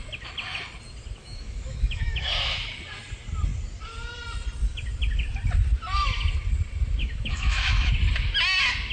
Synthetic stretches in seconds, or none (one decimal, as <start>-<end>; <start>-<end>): 1.2-2.3; 7.0-7.9